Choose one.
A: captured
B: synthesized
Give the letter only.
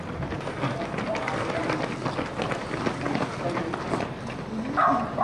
A